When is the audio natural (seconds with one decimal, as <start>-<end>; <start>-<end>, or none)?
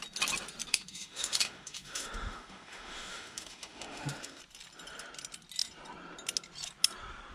0.0-0.7; 4.4-7.3